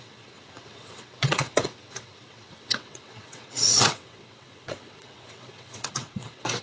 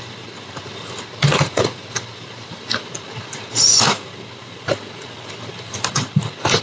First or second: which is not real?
first